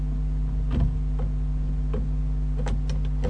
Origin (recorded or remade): recorded